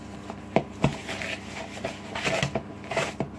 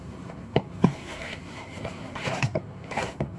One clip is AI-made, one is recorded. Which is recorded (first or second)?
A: first